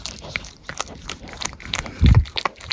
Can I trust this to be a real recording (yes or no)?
no